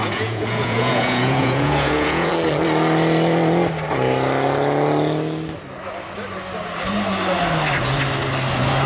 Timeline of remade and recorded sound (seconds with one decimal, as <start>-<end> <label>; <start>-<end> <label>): 0.0-2.3 remade; 2.3-8.9 recorded